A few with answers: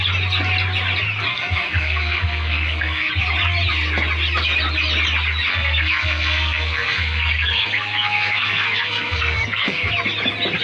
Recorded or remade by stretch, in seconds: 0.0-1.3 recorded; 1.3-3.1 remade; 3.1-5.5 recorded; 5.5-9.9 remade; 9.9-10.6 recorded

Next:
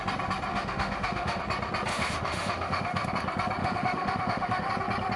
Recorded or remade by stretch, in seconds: 0.0-0.5 recorded; 0.5-1.4 remade; 1.4-1.9 recorded; 1.9-3.1 remade; 3.1-3.6 recorded; 3.6-4.7 remade; 4.7-5.2 recorded

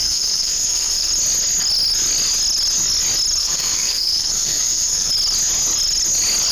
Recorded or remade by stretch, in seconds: 0.0-1.1 remade; 1.1-3.4 recorded; 3.4-5.1 remade; 5.1-6.5 recorded

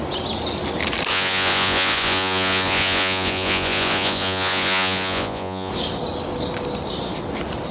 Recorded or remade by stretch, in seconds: 0.0-1.1 recorded; 1.1-5.7 remade; 5.7-7.7 recorded

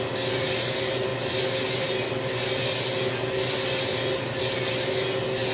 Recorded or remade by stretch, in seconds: 0.0-5.5 recorded